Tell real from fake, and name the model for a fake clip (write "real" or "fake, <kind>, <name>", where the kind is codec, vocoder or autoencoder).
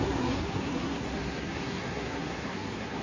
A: fake, codec, SNAC